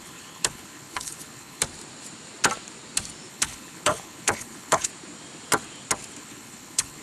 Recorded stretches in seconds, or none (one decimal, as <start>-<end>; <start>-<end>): 1.6-3.3; 4.9-6.2